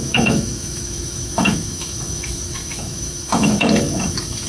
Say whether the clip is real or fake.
fake